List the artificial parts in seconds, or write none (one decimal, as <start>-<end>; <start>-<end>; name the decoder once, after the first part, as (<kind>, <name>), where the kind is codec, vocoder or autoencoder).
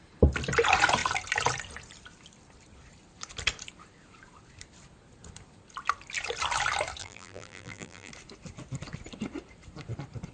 7.0-8.1 (vocoder, BigVGAN v2)